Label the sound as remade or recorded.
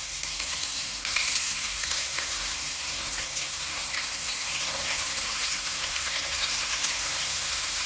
remade